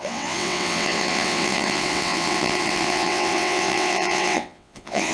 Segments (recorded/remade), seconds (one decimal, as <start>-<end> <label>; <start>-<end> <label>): 0.0-5.1 remade